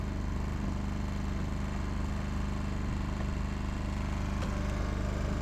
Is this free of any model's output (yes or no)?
yes